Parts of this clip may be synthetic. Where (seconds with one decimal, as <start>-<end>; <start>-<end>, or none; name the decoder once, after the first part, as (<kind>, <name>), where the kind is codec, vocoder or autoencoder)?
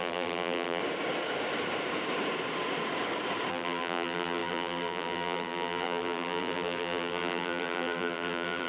0.0-0.8 (vocoder, BigVGAN v2); 3.5-8.7